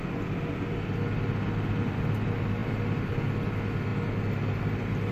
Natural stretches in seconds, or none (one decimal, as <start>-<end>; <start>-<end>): 0.0-2.6; 3.1-5.1